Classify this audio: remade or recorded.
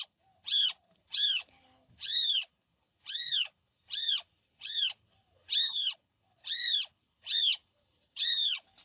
remade